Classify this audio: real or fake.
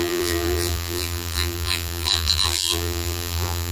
fake